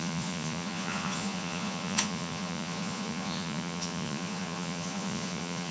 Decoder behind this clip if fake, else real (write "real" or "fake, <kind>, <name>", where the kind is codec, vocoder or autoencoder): fake, vocoder, Vocos